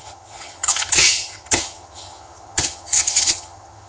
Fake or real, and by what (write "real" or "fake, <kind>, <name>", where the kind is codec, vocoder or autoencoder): fake, vocoder, HiFi-GAN